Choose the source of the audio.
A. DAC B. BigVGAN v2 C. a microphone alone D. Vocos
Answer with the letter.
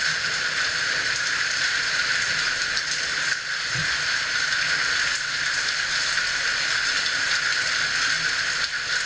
C